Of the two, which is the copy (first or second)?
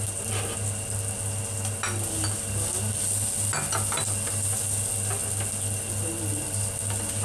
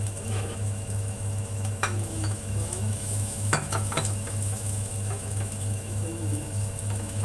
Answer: second